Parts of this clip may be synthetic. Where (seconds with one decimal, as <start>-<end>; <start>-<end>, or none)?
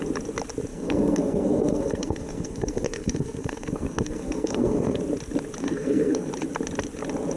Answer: 0.7-5.0; 5.6-6.3